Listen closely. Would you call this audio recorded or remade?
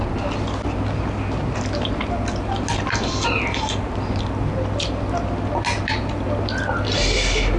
recorded